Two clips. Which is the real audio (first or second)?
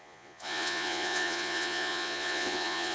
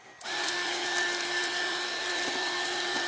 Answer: second